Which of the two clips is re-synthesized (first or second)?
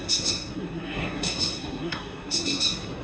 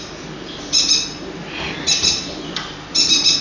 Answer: first